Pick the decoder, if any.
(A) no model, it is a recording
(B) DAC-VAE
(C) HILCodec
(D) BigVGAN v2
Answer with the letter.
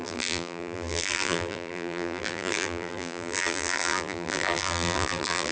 D